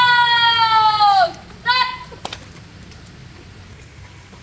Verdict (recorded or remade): recorded